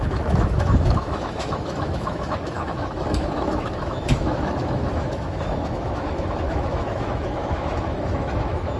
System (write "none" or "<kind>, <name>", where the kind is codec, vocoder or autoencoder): autoencoder, DAC-VAE